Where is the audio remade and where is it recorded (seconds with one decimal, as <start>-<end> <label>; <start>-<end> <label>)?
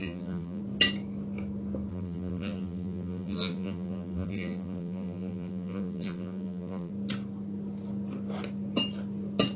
0.0-0.6 remade; 0.6-1.9 recorded; 1.9-6.9 remade; 6.9-9.6 recorded